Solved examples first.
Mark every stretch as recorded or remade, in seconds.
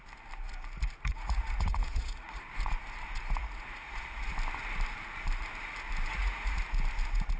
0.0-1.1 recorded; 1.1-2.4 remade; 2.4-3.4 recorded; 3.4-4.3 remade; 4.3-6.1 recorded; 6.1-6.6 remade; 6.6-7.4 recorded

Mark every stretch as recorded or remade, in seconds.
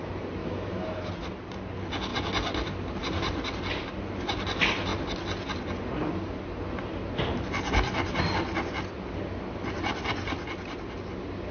0.0-0.4 recorded; 0.4-1.1 remade; 1.1-11.5 recorded